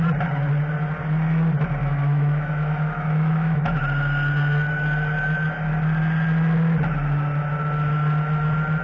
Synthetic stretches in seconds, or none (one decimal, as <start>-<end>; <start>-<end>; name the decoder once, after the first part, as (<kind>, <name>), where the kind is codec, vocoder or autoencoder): 1.8-3.8 (autoencoder, DAC-VAE)